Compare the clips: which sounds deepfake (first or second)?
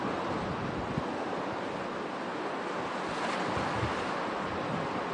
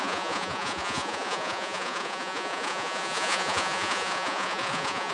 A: second